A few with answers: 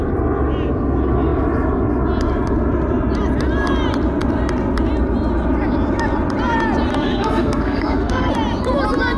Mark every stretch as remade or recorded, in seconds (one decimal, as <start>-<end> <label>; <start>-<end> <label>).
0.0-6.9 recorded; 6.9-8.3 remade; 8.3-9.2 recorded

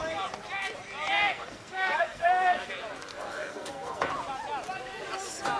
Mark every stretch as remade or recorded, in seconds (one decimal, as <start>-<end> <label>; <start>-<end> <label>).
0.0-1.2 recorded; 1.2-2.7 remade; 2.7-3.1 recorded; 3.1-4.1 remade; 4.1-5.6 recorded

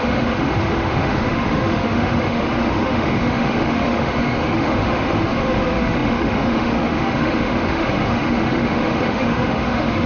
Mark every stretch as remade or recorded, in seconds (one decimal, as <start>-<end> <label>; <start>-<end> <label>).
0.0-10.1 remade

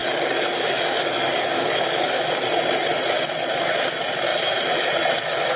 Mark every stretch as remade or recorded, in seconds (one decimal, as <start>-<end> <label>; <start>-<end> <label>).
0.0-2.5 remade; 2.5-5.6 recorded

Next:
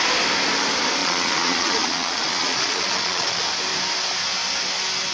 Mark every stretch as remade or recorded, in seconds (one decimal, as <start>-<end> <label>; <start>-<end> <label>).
0.0-1.0 recorded; 1.0-3.4 remade; 3.4-5.1 recorded